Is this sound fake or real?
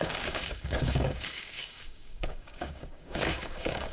fake